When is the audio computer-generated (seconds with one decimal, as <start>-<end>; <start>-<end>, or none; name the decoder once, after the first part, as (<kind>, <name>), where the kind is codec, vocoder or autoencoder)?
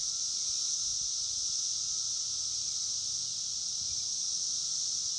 none